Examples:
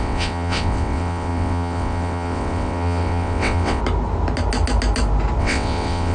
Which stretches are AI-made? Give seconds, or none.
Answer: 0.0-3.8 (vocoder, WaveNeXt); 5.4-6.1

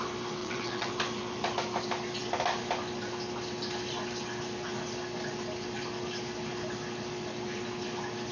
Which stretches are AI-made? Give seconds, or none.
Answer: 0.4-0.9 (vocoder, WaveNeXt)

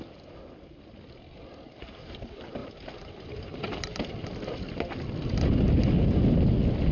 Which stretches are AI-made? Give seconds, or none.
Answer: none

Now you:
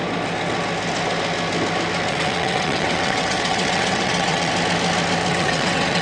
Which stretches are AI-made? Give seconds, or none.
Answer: 2.1-4.5 (vocoder, WaveNeXt); 5.3-6.0

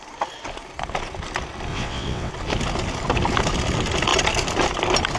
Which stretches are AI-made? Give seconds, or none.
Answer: 1.7-2.3 (vocoder, WaveNeXt)

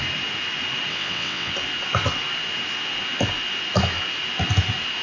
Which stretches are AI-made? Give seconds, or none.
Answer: 0.9-1.5 (vocoder, WaveNeXt)